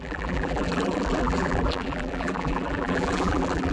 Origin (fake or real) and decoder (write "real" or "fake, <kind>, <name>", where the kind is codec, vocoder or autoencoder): fake, vocoder, BigVGAN v2